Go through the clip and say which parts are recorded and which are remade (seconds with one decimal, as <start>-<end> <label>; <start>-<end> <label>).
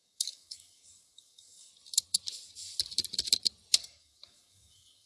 0.0-1.7 remade; 1.7-3.8 recorded; 3.8-5.1 remade